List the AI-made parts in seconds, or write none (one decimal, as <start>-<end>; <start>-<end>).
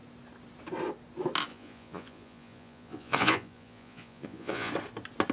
1.5-4.7